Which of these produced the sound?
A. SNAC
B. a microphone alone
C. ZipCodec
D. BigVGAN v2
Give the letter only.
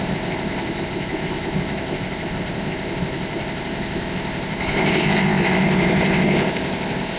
C